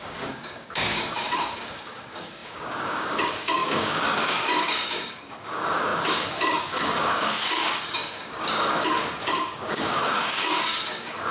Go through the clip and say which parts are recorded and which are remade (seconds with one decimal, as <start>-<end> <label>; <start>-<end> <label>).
0.0-11.3 remade